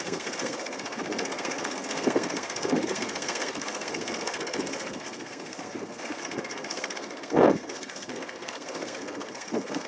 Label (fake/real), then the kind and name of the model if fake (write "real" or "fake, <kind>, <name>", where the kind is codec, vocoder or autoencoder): fake, codec, SNAC